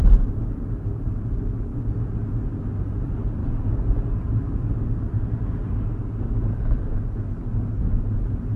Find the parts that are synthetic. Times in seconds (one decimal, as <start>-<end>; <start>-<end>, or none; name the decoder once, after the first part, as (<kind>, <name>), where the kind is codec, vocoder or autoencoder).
none